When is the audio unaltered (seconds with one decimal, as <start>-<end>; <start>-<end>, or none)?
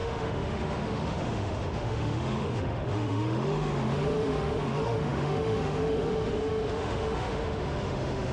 none